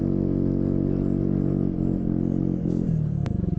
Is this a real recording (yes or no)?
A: yes